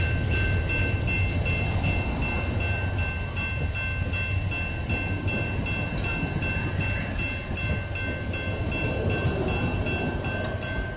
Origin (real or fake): real